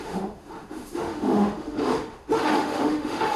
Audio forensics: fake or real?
fake